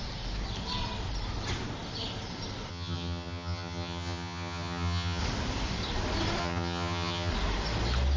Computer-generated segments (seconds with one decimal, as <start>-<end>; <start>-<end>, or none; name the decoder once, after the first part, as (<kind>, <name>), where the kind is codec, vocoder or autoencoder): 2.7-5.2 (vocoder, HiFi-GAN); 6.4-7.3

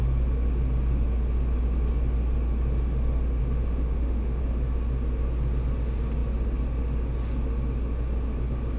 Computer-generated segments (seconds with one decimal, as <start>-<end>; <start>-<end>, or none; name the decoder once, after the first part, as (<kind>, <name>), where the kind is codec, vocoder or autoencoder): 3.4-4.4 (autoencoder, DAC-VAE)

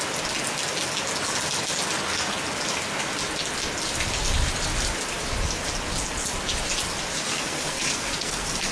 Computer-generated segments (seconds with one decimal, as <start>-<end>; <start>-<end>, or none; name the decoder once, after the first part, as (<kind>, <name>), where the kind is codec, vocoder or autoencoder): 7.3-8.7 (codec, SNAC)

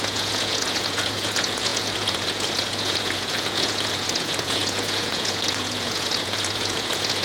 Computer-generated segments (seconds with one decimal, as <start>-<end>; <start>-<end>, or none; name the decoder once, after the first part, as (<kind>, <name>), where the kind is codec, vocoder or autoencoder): 0.0-7.2 (vocoder, Vocos)

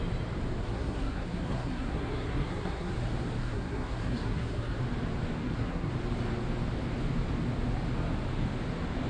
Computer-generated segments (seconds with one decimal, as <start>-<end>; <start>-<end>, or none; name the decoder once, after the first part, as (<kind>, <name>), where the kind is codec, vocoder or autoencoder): 0.6-2.9 (codec, SNAC); 3.4-4.8; 5.4-5.9